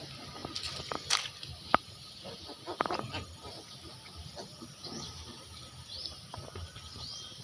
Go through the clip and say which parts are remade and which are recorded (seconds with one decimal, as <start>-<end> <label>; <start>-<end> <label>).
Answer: 0.0-7.4 recorded